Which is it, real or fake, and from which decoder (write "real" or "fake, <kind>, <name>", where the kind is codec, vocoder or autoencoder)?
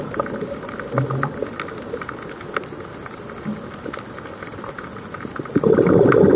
real